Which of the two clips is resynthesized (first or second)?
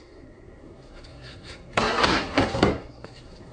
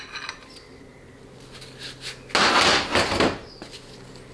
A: first